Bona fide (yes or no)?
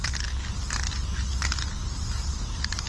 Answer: yes